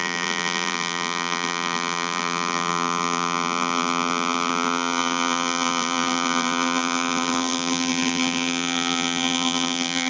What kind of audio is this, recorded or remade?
remade